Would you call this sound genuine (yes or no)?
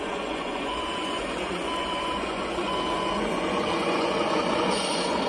no